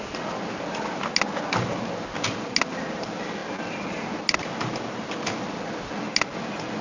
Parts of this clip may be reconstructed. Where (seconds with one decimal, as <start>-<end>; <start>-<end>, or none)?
none